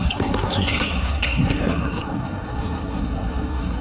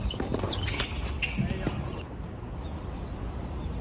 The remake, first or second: first